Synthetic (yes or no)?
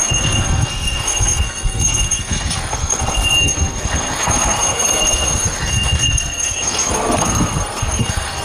yes